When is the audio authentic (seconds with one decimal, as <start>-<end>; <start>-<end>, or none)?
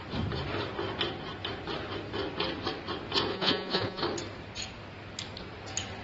0.0-3.3; 4.0-6.0